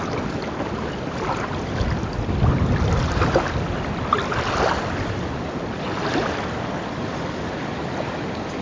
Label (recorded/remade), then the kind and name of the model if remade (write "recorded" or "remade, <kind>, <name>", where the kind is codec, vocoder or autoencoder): recorded